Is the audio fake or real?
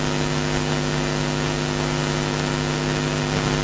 real